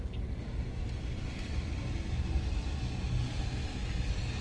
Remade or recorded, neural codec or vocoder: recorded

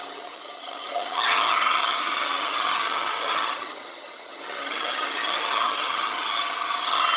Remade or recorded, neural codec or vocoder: remade, vocoder, HiFi-GAN